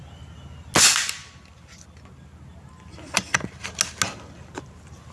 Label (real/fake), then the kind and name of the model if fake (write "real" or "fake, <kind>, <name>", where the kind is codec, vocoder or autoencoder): real